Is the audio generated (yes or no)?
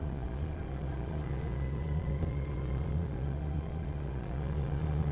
yes